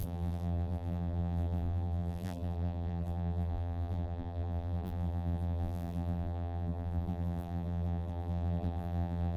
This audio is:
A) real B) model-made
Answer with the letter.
B